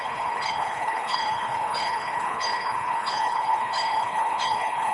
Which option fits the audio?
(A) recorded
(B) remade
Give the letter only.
B